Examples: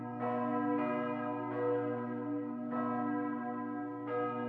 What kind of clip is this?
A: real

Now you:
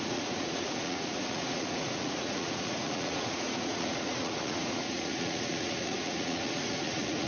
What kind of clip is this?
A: fake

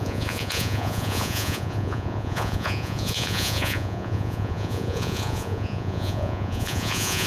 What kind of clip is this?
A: fake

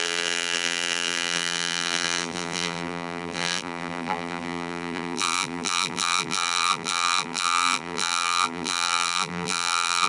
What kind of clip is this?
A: fake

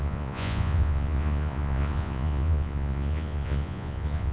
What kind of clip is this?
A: fake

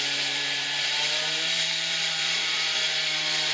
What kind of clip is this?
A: fake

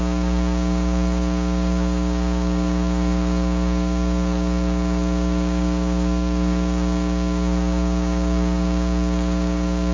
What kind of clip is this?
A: fake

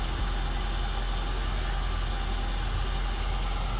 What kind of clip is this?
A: real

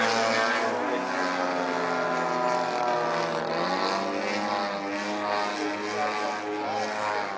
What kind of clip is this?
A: real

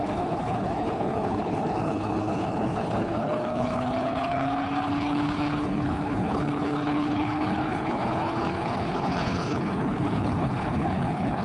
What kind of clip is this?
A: fake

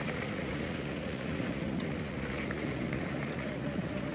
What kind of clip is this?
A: fake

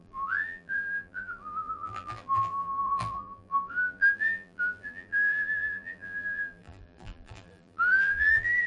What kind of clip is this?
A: fake